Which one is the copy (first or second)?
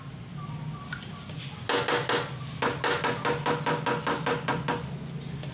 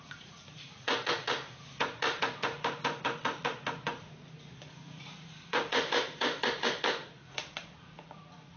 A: second